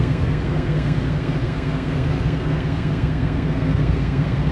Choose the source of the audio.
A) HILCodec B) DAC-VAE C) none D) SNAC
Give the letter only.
D